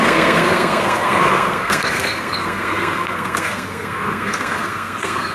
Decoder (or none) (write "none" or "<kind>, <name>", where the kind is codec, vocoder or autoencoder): codec, SNAC